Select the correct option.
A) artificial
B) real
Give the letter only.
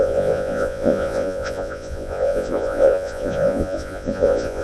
A